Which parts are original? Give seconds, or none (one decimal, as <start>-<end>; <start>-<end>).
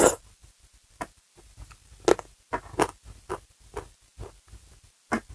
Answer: 0.0-5.3